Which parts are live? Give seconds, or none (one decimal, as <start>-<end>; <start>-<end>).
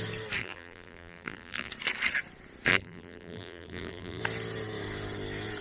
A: 0.0-0.4; 1.7-2.7; 4.2-5.6